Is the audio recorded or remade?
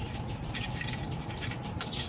recorded